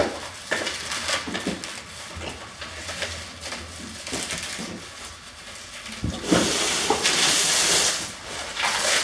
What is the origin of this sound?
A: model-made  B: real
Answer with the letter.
B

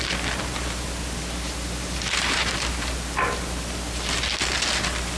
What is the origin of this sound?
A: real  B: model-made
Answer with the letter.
A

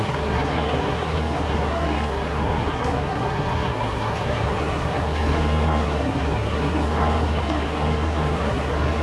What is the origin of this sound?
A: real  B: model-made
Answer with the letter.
B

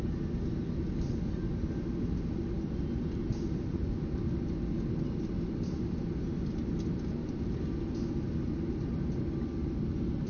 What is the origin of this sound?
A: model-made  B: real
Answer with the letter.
B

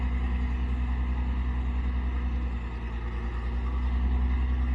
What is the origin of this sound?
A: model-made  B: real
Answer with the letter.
B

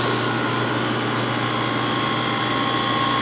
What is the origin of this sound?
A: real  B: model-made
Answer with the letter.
A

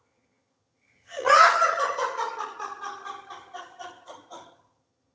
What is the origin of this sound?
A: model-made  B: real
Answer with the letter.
A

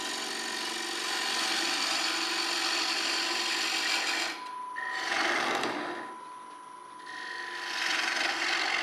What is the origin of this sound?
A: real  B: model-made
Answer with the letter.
A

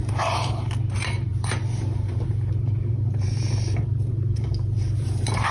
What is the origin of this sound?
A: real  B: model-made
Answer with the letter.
B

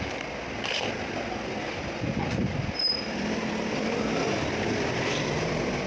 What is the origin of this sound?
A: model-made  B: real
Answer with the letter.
A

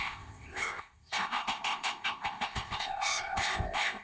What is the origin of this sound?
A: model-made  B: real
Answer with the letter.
A